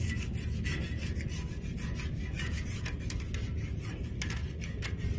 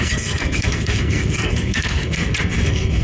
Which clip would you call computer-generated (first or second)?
second